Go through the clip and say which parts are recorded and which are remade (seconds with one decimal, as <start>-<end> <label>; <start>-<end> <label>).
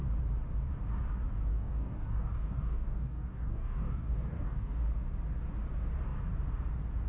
0.0-1.5 recorded; 1.5-4.8 remade; 4.8-7.1 recorded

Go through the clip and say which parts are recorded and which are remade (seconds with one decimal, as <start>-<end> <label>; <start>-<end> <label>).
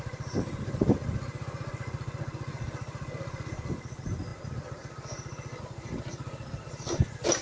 0.0-7.4 recorded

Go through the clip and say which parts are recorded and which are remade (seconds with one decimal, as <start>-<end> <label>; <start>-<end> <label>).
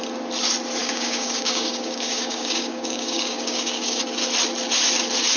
0.0-0.8 recorded; 0.8-4.0 remade; 4.0-5.4 recorded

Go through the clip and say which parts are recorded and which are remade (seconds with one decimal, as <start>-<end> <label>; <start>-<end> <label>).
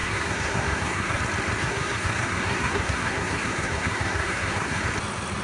0.0-1.2 remade; 1.2-1.6 recorded; 1.6-4.8 remade; 4.8-5.4 recorded